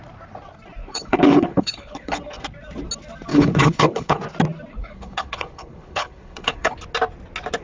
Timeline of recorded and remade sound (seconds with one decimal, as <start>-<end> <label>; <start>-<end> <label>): 0.0-0.8 recorded; 0.8-2.2 remade; 2.2-3.3 recorded; 3.3-4.2 remade; 4.2-4.7 recorded; 4.7-6.7 remade; 6.7-7.6 recorded